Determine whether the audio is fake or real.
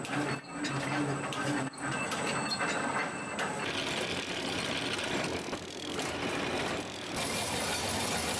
real